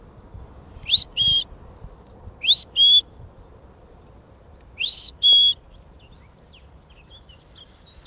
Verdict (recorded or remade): recorded